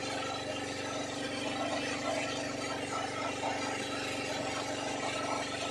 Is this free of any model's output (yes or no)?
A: yes